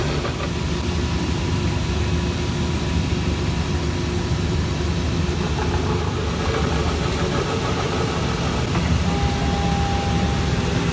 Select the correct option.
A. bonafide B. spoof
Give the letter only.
A